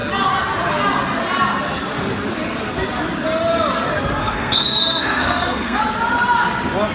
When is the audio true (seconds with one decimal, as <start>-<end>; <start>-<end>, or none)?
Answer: 0.0-4.2; 5.8-6.9

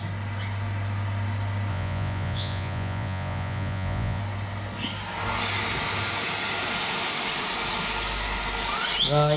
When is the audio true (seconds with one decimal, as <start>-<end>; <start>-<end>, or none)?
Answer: 0.0-1.7; 4.2-9.4

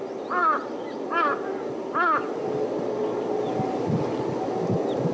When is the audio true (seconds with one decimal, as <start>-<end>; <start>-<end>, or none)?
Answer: 0.0-5.1

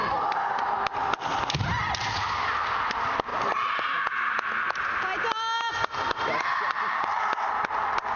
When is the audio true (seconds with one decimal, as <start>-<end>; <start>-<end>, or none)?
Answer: 0.0-8.2

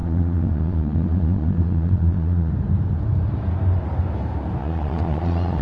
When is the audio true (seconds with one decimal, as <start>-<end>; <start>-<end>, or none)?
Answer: 2.5-4.6